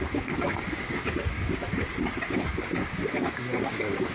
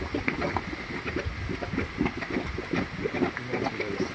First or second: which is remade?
first